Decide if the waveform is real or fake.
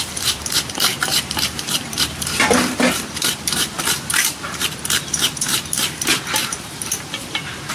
fake